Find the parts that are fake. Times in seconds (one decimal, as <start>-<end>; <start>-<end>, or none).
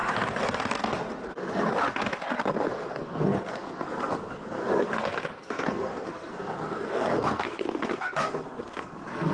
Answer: 2.4-9.3